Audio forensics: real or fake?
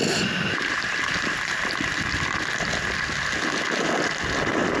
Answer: real